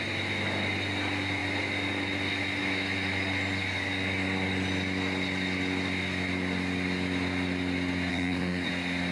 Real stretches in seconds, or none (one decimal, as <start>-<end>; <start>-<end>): 0.0-8.1; 8.7-9.1